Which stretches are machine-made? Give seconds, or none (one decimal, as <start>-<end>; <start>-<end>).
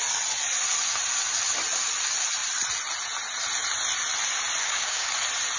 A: 4.6-5.1